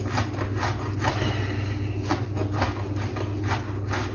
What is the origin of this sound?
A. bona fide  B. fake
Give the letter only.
A